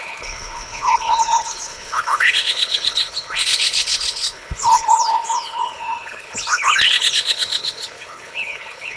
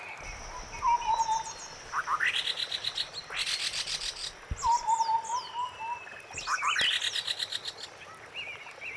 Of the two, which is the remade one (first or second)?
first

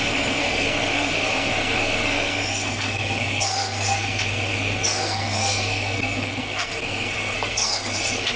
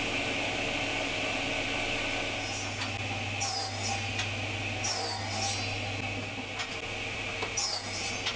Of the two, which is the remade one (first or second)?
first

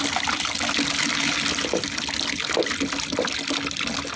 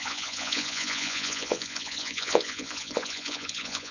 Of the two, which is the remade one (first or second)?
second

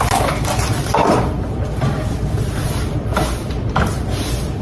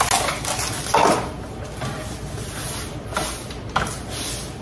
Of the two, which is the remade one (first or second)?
first